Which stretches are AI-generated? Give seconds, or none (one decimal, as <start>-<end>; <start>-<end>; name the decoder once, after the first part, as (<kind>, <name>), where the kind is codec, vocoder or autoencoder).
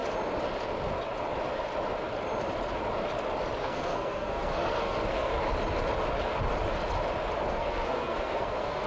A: 3.6-5.3 (codec, SNAC); 7.5-8.9